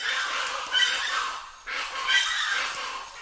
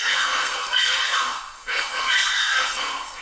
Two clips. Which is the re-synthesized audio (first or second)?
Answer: second